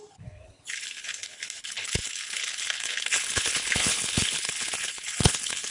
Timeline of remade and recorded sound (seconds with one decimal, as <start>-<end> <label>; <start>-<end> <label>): 0.0-5.7 remade